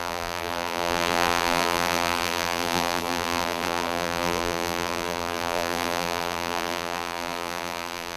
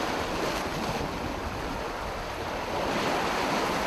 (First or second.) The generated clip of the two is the first